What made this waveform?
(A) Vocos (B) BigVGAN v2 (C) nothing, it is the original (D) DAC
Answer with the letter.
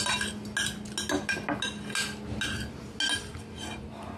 C